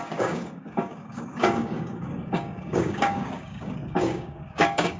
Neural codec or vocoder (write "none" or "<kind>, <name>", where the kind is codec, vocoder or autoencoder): codec, DAC